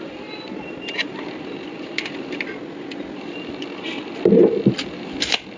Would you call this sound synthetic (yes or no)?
no